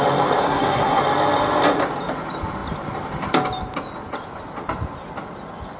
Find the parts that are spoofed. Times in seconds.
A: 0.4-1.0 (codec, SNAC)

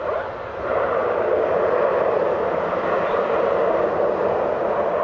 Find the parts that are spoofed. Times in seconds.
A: none

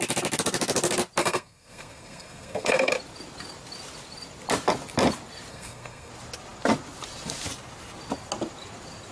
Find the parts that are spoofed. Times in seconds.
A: 1.2-2.9 (codec, SNAC); 5.5-6.1

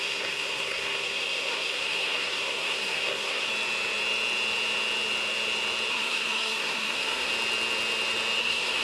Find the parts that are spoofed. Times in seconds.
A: 0.0-3.5 (codec, SNAC); 5.9-7.3; 8.4-8.8

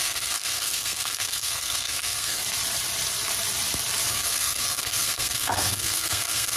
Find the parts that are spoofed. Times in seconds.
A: 0.0-2.4 (codec, SNAC); 4.1-6.6

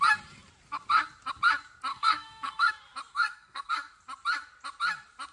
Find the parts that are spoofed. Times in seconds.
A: 1.9-2.7 (codec, SNAC); 3.1-3.7

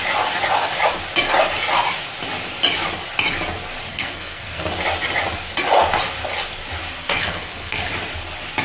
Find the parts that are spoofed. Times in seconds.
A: 3.9-4.7 (codec, SNAC); 7.0-7.9